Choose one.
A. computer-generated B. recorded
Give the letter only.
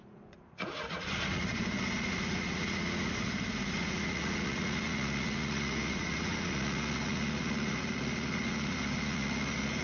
A